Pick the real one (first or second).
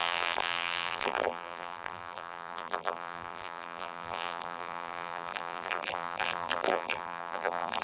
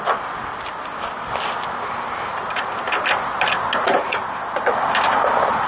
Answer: second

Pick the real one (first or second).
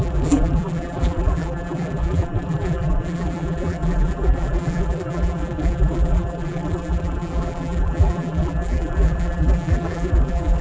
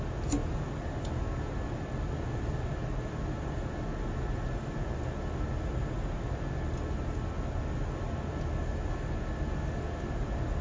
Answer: second